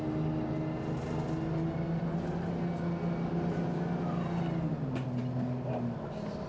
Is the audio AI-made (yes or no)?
no